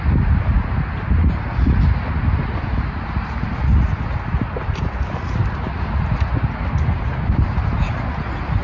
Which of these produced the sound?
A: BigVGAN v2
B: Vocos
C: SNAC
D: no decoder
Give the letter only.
D